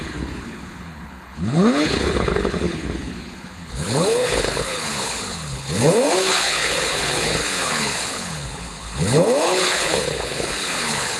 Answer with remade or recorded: remade